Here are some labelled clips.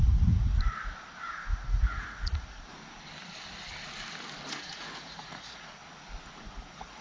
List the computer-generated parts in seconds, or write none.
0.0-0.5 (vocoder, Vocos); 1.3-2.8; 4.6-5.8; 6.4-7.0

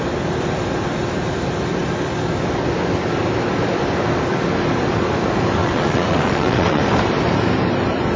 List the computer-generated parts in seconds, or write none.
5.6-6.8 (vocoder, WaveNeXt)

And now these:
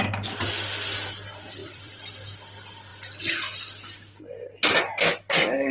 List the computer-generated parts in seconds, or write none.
1.6-2.1 (vocoder, BigVGAN v2)

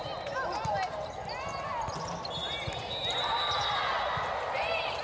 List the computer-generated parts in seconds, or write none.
none

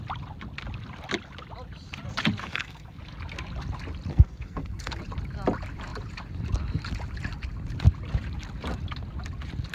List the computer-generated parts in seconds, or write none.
2.4-3.0 (codec, SNAC); 4.1-5.0